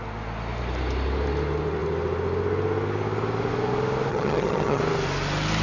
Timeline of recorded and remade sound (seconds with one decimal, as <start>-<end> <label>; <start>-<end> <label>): 0.0-4.1 recorded; 4.1-4.8 remade; 4.8-5.6 recorded